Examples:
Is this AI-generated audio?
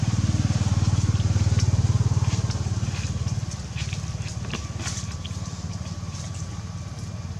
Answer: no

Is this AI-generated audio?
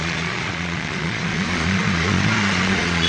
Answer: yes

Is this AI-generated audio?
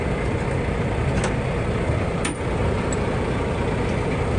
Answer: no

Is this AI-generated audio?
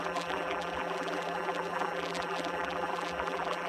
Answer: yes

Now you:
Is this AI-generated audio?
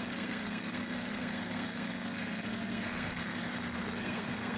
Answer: yes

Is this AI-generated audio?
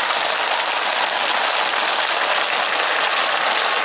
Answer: no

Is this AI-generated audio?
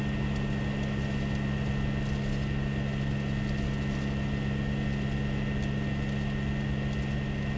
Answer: no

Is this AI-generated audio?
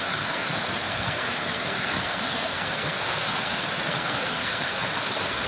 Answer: yes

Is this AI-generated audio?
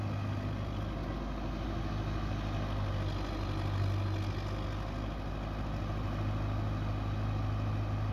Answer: no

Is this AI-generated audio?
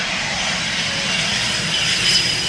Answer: no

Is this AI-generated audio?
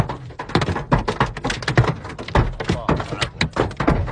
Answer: no